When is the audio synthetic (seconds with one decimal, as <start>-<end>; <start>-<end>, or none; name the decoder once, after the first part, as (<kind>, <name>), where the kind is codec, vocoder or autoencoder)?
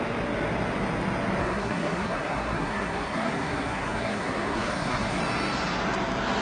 1.4-5.2 (codec, SNAC)